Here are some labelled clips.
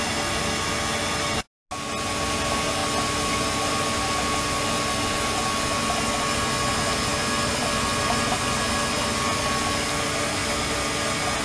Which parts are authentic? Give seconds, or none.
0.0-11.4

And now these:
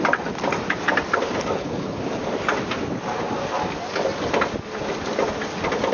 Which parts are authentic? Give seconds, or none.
0.0-1.5; 2.0-5.9

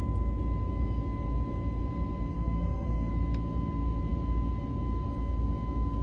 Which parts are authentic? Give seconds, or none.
0.0-2.3; 3.1-6.0

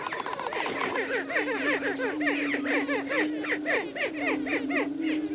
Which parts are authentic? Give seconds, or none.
0.0-5.3